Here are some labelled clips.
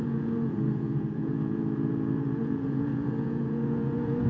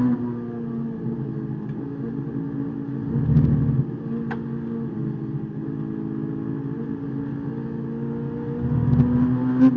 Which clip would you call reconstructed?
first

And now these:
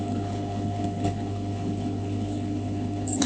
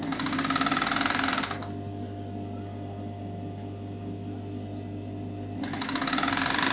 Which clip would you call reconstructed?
first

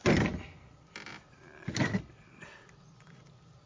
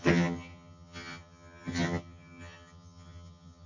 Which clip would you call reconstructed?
second